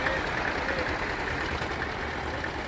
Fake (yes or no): no